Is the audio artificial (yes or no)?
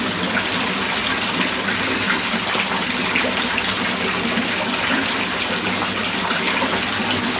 no